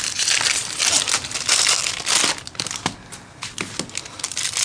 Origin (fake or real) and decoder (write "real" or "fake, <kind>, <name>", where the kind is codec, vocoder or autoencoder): real